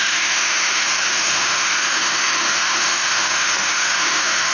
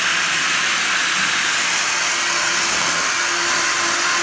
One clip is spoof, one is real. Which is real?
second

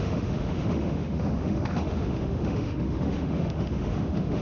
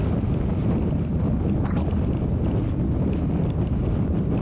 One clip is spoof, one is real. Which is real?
second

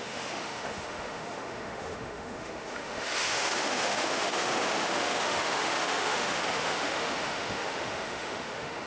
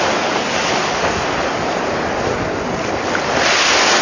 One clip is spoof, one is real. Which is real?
second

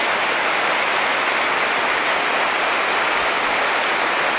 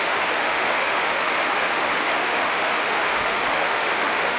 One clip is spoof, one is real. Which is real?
first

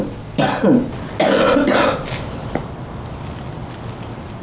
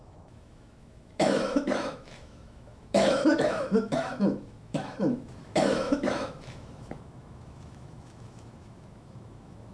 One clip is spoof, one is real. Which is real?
first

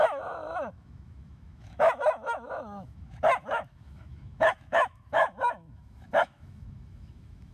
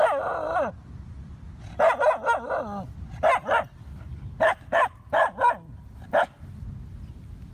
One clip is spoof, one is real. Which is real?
second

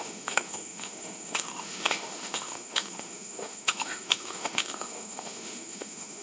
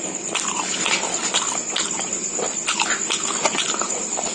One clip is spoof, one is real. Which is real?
second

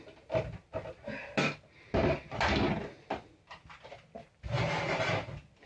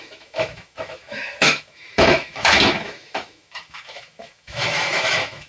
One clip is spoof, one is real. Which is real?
first